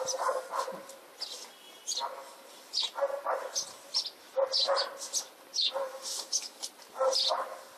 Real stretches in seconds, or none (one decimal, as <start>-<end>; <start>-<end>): 0.0-5.9; 6.6-7.8

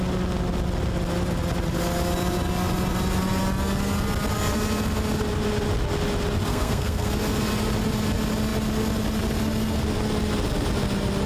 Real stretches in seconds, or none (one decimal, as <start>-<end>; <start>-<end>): 0.0-6.5; 7.1-11.3